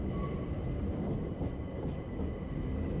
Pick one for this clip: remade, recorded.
recorded